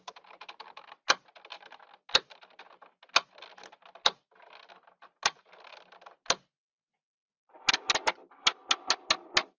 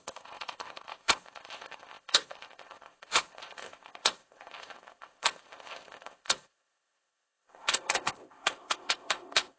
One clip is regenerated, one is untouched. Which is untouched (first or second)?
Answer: first